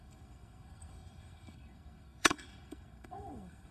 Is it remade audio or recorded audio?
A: remade